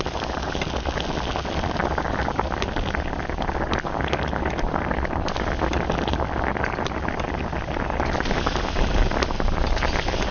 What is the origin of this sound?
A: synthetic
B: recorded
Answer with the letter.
B